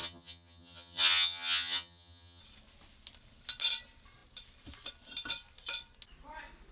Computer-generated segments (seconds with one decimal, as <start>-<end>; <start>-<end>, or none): 0.0-2.4